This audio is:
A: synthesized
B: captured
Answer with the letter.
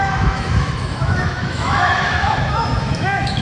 A